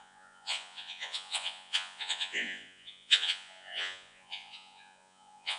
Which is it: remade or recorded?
remade